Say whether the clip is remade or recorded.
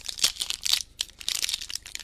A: remade